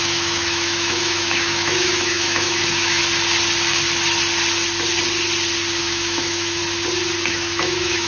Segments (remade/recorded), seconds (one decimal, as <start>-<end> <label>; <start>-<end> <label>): 0.0-3.0 remade; 3.0-5.8 recorded; 5.8-6.6 remade; 6.6-7.3 recorded; 7.3-8.1 remade